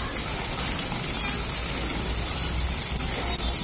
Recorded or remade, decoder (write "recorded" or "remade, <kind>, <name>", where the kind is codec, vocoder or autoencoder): recorded